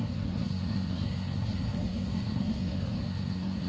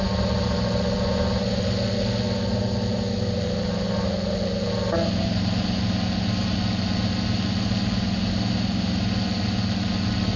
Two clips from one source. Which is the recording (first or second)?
second